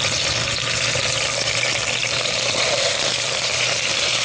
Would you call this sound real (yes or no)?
no